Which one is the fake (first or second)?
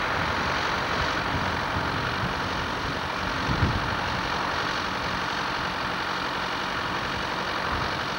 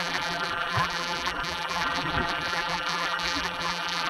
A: second